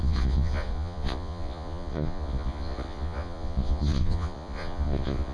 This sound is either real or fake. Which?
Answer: fake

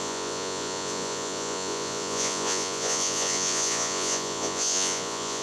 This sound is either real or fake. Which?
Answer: fake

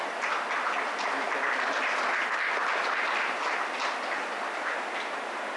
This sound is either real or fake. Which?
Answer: real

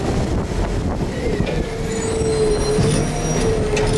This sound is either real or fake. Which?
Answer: real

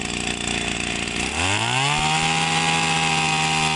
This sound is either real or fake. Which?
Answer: real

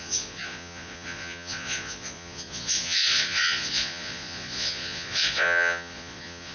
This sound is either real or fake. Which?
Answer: fake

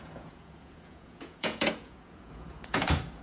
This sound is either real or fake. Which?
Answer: fake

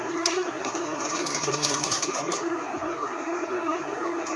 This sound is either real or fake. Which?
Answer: fake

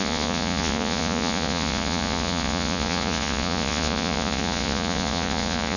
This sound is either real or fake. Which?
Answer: fake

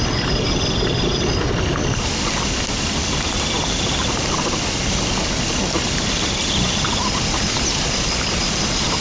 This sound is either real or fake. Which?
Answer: real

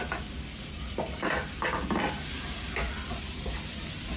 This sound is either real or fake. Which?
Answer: real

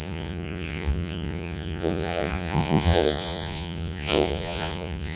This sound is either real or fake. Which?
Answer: fake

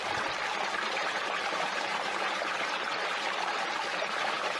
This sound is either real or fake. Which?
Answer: fake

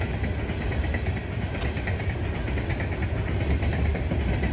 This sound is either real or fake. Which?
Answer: real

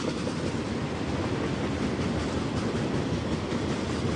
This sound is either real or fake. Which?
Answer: real